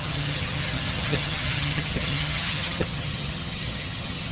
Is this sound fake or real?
fake